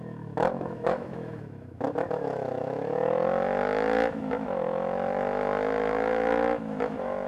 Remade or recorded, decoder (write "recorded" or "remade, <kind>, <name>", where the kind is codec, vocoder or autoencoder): remade, autoencoder, DAC-VAE